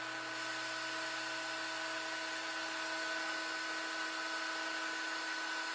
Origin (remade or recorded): recorded